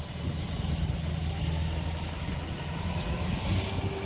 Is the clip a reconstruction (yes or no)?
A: no